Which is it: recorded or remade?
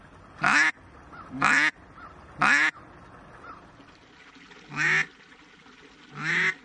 recorded